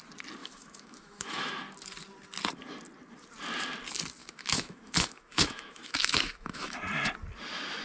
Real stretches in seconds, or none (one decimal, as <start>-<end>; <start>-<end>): 0.0-0.4; 1.5-4.2; 6.8-7.8